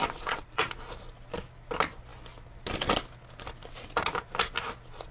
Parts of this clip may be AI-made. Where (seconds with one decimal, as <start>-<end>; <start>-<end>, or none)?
0.0-0.7